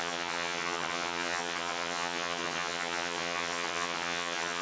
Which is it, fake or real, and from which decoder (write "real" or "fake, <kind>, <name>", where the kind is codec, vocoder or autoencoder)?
fake, vocoder, HiFi-GAN